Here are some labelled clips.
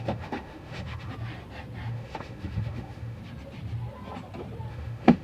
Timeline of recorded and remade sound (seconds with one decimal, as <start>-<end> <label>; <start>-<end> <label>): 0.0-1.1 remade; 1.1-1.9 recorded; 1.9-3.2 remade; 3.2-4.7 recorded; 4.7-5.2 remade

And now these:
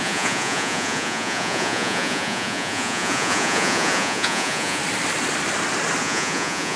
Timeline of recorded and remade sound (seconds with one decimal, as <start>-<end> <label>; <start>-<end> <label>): 0.0-4.8 remade; 4.8-6.0 recorded; 6.0-6.8 remade

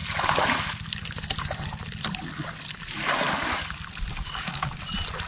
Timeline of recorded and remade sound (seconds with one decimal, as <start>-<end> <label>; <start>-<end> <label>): 0.0-4.1 recorded; 4.1-4.8 remade; 4.8-5.3 recorded

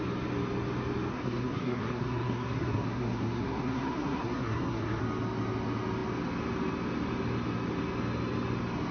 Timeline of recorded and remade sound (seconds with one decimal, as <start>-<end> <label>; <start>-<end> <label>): 0.0-1.1 recorded; 1.1-5.0 remade; 5.0-8.9 recorded

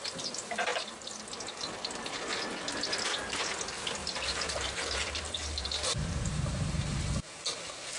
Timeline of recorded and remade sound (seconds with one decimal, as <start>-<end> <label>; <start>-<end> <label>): 0.0-4.0 recorded; 4.0-7.0 remade; 7.0-8.0 recorded